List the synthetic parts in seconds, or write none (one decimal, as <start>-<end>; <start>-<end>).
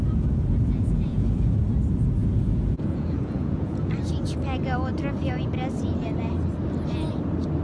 0.0-1.6; 2.2-3.9